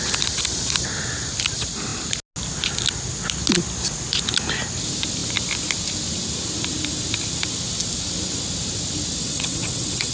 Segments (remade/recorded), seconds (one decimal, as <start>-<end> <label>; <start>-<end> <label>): 0.0-9.2 recorded; 9.2-10.1 remade

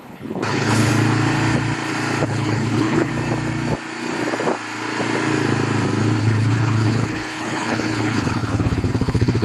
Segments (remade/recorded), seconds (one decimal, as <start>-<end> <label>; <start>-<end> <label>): 0.0-0.9 remade; 0.9-2.2 recorded; 2.2-3.1 remade; 3.1-6.2 recorded; 6.2-9.4 remade

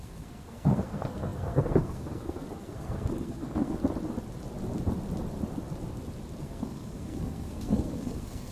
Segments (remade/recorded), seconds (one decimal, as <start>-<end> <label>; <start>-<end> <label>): 0.0-3.8 remade; 3.8-6.4 recorded; 6.4-8.5 remade

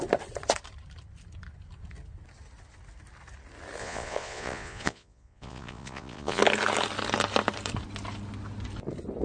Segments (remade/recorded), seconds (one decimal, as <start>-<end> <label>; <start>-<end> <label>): 0.0-3.8 recorded; 3.8-6.4 remade; 6.4-9.2 recorded

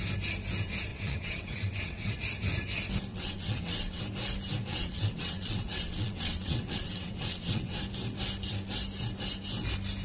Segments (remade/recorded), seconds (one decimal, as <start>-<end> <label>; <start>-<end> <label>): 0.0-0.9 recorded; 0.9-2.1 remade; 2.1-3.1 recorded; 3.1-4.0 remade; 4.0-4.7 recorded; 4.7-7.8 remade; 7.8-10.0 recorded

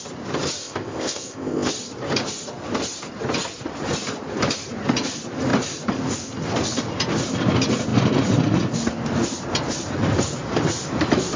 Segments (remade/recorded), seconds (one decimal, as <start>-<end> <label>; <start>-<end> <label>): 0.0-0.6 recorded; 0.6-1.7 remade; 1.7-11.4 recorded

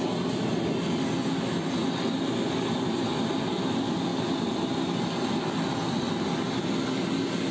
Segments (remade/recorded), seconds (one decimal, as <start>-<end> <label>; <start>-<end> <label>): 0.0-7.5 recorded

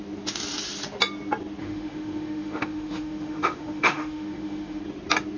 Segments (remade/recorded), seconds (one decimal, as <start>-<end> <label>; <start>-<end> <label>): 0.0-1.6 recorded; 1.6-4.8 remade; 4.8-5.4 recorded